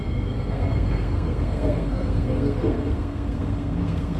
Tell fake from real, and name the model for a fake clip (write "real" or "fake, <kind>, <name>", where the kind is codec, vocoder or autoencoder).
fake, codec, SNAC